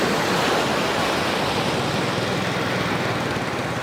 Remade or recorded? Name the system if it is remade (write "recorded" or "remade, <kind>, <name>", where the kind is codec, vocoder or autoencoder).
recorded